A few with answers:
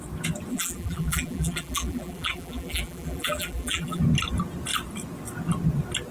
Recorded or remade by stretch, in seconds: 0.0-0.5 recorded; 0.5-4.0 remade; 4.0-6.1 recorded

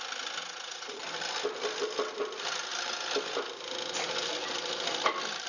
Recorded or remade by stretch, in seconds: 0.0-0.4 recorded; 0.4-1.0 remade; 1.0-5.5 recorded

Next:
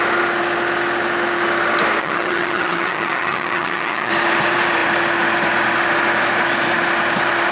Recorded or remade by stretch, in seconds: 0.0-2.0 recorded; 2.0-4.1 remade; 4.1-7.5 recorded

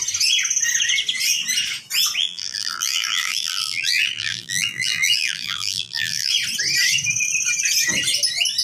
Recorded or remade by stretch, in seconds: 0.0-2.2 recorded; 2.2-6.3 remade; 6.3-8.6 recorded